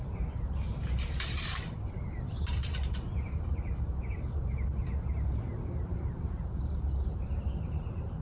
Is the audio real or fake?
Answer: fake